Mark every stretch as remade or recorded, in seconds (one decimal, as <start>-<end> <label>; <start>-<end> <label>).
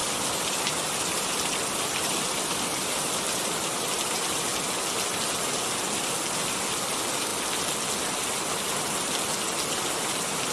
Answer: 0.0-4.5 remade; 4.5-6.3 recorded; 6.3-7.3 remade; 7.3-9.7 recorded; 9.7-10.5 remade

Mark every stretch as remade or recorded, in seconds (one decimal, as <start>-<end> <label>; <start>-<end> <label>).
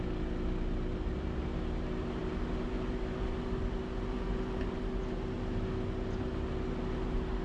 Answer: 0.0-7.4 recorded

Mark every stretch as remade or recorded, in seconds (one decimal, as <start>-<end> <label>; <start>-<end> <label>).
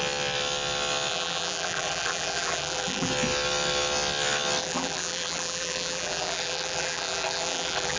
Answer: 0.0-1.1 recorded; 1.1-3.1 remade; 3.1-4.6 recorded; 4.6-8.0 remade